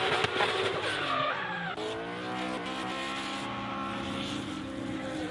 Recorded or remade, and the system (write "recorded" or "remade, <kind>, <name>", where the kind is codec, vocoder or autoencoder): recorded